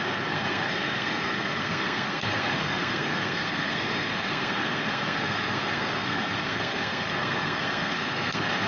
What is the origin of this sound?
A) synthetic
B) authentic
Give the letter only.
A